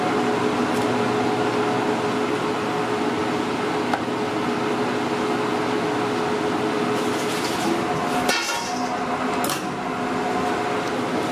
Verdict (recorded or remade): recorded